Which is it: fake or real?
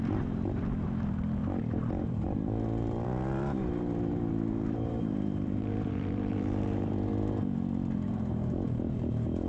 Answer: fake